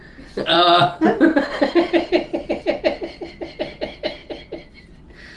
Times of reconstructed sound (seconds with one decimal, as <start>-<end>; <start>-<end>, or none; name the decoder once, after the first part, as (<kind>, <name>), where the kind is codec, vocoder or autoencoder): 0.5-2.5 (vocoder, BigVGAN v2)

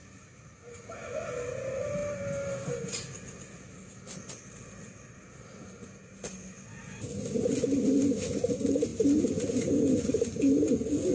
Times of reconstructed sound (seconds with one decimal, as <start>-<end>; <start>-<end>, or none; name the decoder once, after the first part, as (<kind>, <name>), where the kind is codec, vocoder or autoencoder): none

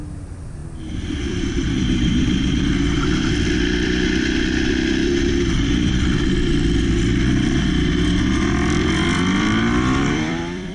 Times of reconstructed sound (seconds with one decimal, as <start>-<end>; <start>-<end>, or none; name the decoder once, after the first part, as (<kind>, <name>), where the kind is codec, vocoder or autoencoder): 0.0-10.7 (vocoder, BigVGAN v2)

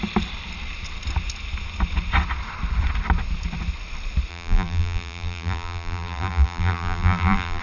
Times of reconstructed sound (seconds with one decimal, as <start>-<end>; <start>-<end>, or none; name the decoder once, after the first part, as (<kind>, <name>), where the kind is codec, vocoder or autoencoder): 4.3-7.6 (vocoder, BigVGAN v2)